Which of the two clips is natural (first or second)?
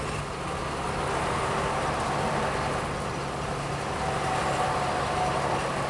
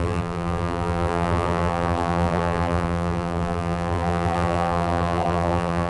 first